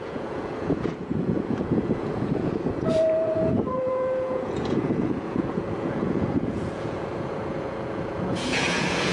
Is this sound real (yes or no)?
no